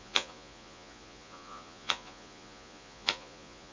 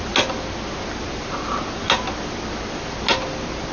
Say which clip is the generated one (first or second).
first